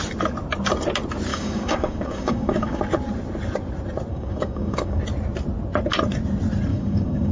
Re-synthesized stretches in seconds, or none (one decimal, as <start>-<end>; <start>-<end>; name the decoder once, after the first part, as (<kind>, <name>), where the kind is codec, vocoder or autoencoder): 1.3-2.8 (codec, DAC); 4.1-5.0; 6.7-7.3